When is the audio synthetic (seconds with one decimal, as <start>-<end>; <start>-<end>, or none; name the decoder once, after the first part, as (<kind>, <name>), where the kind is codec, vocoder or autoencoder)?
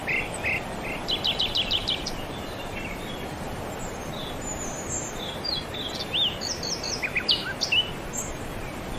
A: 1.4-4.1 (vocoder, BigVGAN v2); 8.6-9.0